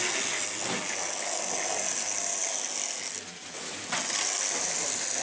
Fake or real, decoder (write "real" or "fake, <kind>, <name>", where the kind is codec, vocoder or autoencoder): real